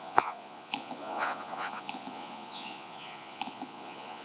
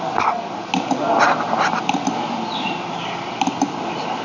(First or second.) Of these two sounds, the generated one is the first